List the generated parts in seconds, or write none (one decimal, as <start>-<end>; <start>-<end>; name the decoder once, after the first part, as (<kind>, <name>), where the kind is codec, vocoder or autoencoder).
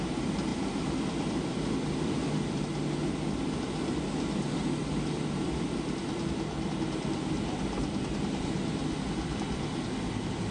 0.5-2.6 (vocoder, BigVGAN v2); 4.8-7.6